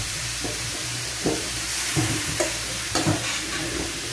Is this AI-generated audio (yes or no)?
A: yes